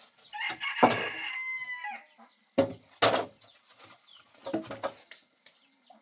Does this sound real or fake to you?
real